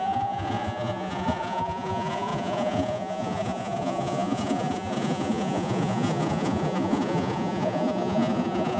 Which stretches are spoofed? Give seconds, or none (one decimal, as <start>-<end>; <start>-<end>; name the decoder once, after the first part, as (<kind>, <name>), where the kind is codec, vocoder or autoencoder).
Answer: 0.0-8.8 (vocoder, Vocos)

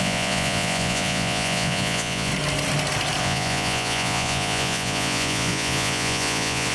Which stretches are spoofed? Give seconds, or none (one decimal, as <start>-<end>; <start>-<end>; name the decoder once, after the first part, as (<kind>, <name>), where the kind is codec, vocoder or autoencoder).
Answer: 0.0-2.3 (vocoder, Vocos); 3.2-6.7

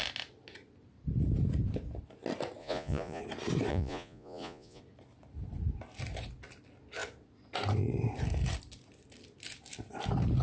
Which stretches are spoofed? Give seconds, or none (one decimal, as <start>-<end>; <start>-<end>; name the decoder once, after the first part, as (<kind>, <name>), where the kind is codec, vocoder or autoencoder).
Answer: 2.6-3.2 (vocoder, Vocos); 3.7-4.8

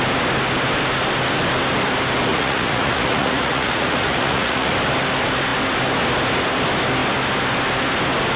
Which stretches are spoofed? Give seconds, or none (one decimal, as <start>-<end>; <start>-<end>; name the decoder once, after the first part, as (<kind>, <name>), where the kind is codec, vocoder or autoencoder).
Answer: 2.3-4.7 (vocoder, Vocos)

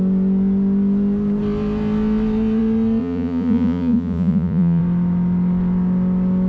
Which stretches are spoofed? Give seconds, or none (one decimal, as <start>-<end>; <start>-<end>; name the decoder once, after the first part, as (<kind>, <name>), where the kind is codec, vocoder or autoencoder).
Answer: 3.0-4.8 (vocoder, Vocos)

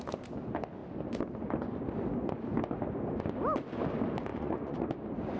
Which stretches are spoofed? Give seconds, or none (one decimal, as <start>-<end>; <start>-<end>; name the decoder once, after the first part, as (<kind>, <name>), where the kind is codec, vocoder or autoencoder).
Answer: 4.3-4.9 (vocoder, Vocos)

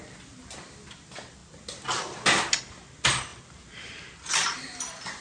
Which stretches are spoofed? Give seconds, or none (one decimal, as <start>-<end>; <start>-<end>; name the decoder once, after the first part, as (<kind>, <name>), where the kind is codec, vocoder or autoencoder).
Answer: none